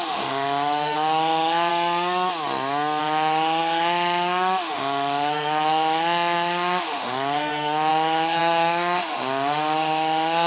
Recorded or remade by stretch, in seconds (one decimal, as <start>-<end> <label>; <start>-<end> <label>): 0.0-1.7 remade; 1.7-3.0 recorded; 3.0-10.5 remade